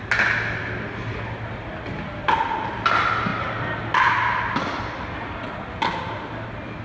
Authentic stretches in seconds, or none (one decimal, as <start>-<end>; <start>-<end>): 0.0-6.8